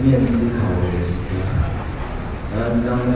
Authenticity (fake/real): real